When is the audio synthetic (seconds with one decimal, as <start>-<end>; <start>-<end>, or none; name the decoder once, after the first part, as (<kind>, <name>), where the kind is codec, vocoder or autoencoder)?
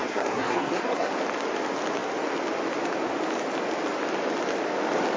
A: 0.0-1.1 (codec, SNAC)